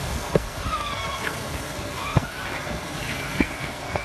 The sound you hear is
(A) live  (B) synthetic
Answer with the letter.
B